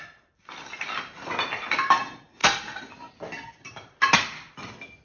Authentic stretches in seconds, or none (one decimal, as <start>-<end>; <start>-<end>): 0.0-2.4; 3.1-5.0